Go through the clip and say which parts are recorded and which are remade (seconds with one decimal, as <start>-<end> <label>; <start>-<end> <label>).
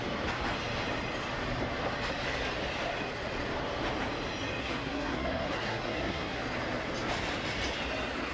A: 0.0-4.6 recorded; 4.6-6.4 remade; 6.4-8.3 recorded